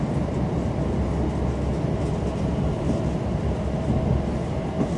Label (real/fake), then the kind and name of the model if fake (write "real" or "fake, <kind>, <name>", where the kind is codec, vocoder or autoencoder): real